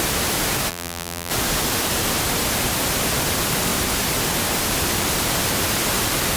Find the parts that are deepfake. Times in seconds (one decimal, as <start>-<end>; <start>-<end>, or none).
0.7-1.3